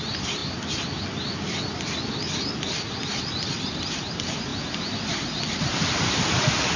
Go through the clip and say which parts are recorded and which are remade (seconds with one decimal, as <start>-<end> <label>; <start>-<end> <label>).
0.0-0.4 remade; 0.4-3.8 recorded; 3.8-4.5 remade; 4.5-5.6 recorded; 5.6-6.8 remade

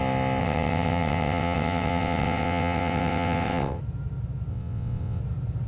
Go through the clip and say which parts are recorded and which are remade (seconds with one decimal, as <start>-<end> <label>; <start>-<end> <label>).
0.0-0.4 recorded; 0.4-3.8 remade; 3.8-4.5 recorded; 4.5-5.2 remade; 5.2-5.7 recorded